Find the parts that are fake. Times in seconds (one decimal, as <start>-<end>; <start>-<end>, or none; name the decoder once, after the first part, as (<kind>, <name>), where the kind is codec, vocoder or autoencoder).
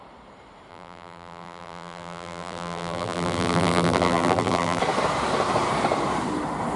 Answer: 0.7-4.8 (vocoder, BigVGAN v2)